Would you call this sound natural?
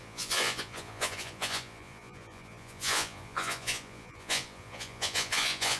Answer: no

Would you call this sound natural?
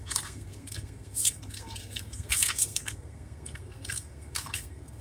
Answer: no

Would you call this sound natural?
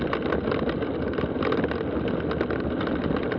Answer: yes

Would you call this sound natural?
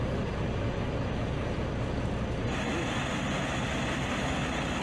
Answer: yes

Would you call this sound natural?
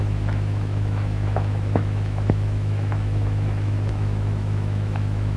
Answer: no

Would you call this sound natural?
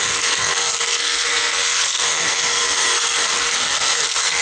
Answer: no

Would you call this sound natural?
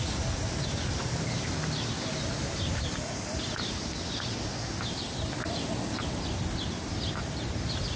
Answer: yes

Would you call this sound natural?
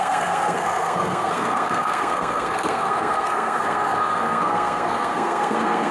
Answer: no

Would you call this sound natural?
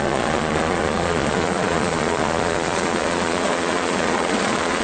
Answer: no